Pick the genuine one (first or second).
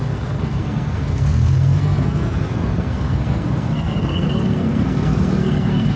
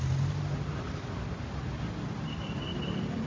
second